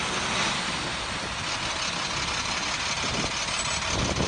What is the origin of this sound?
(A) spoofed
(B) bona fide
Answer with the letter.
B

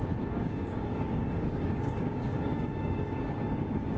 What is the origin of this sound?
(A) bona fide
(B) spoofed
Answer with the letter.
B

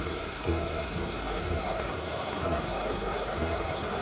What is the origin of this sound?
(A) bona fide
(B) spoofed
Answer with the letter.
B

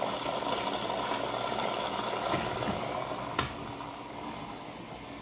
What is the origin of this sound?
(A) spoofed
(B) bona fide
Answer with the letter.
B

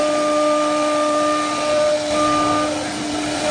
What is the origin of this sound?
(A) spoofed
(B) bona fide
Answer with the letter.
B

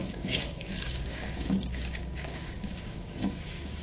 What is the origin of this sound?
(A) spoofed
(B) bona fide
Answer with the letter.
A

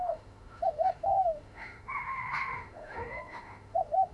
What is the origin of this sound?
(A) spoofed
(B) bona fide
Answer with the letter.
A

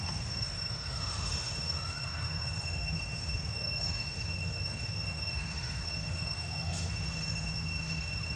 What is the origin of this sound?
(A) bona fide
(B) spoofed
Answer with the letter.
B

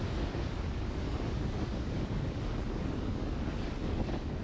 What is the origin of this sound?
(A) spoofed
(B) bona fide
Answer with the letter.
A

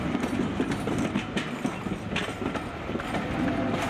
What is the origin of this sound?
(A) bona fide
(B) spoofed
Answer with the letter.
A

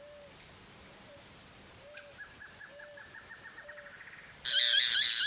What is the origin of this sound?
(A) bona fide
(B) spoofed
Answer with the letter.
A